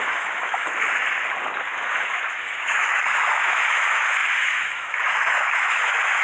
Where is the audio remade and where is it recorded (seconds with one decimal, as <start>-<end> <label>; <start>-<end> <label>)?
0.0-1.0 remade; 1.0-1.9 recorded; 1.9-6.2 remade